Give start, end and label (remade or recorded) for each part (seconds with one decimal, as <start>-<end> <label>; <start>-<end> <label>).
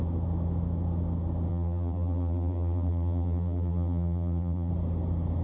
0.0-1.5 recorded; 1.5-4.7 remade; 4.7-5.4 recorded